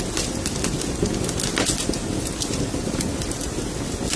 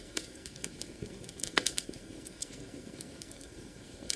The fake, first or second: second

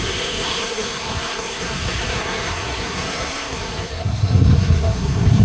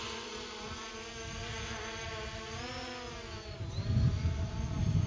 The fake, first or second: first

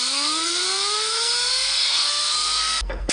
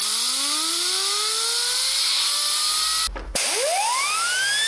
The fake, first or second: first